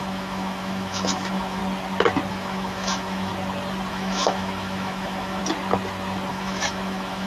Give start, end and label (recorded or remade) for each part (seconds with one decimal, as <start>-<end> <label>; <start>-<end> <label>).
0.0-1.6 remade; 1.6-2.3 recorded; 2.3-3.3 remade; 3.3-3.9 recorded; 3.9-5.4 remade; 5.4-6.3 recorded; 6.3-7.3 remade